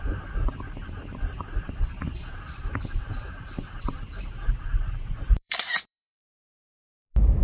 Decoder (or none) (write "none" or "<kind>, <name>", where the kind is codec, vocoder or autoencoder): vocoder, BigVGAN v2